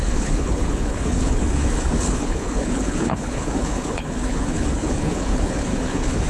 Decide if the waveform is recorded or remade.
remade